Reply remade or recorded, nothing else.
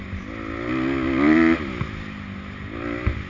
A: recorded